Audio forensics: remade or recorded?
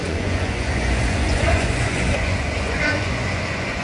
remade